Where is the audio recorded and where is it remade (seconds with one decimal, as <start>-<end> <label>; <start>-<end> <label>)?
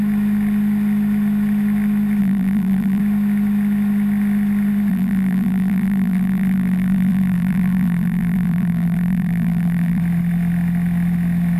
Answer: 0.0-2.2 recorded; 2.2-3.0 remade; 3.0-4.9 recorded; 4.9-10.0 remade; 10.0-11.6 recorded